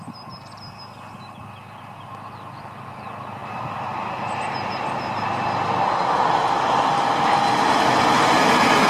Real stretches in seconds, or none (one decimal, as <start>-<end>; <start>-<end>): 0.0-8.9